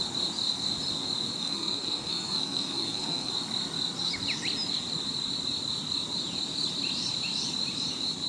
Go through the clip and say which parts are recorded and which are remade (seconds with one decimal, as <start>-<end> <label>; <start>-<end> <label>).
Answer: 0.0-1.4 recorded; 1.4-3.3 remade; 3.3-8.3 recorded